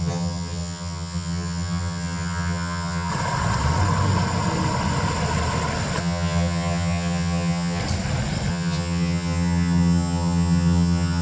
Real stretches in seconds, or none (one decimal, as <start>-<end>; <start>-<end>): 3.1-6.0; 7.8-8.5